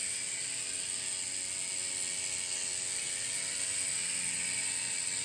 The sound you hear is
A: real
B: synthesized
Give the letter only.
A